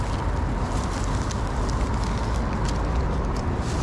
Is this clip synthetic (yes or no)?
no